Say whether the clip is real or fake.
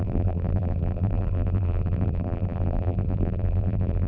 fake